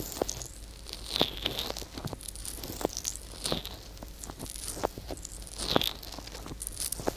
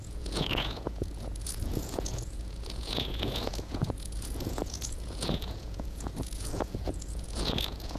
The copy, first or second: second